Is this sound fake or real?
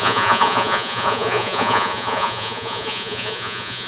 fake